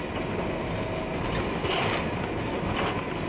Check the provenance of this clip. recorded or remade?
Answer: recorded